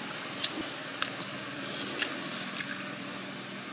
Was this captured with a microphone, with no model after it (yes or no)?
yes